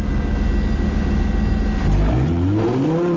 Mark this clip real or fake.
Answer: real